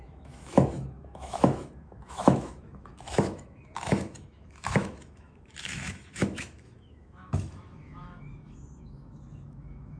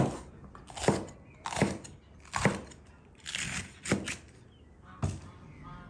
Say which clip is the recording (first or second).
second